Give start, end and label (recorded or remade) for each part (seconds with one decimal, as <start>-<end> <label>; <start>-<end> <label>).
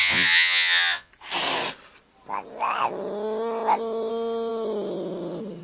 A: 0.0-1.1 remade; 1.1-5.6 recorded